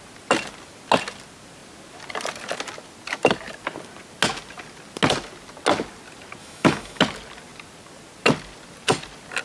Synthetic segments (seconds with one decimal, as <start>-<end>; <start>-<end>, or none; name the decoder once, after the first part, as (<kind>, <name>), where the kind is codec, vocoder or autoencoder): 6.4-7.0 (autoencoder, DAC-VAE)